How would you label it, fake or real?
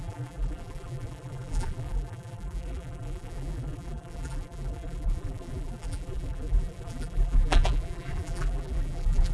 fake